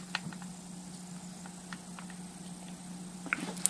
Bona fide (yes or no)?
yes